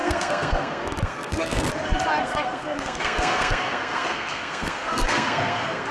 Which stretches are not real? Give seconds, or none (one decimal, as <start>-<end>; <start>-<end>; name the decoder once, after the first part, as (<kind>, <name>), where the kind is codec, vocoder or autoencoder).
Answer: 0.0-1.7 (codec, SNAC); 2.1-5.9